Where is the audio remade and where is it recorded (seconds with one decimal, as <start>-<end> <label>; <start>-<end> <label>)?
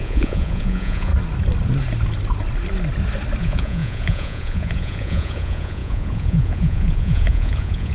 0.0-1.1 remade; 1.1-3.4 recorded; 3.4-7.9 remade